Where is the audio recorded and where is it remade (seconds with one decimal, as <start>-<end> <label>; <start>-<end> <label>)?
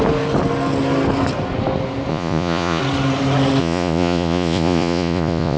0.0-2.1 recorded; 2.1-2.8 remade; 2.8-3.6 recorded; 3.6-5.6 remade